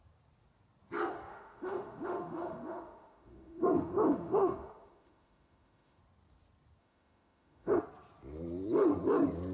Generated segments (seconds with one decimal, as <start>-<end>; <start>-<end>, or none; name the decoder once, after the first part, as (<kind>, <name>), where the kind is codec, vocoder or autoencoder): 1.3-6.0 (autoencoder, DAC-VAE); 6.8-7.8